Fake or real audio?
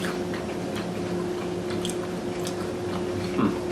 real